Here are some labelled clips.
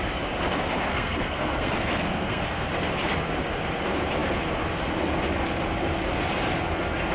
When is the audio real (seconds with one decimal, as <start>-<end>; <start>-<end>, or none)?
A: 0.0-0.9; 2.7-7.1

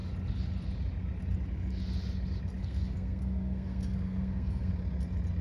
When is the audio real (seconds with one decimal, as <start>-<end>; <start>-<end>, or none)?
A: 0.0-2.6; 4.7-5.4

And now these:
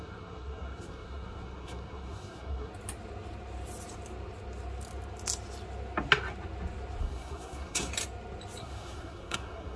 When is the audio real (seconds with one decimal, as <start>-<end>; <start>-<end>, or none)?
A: 2.7-7.0; 7.9-8.6

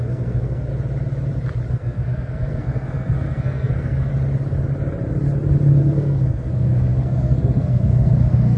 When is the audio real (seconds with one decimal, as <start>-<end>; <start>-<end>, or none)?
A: 0.7-1.7; 4.1-5.8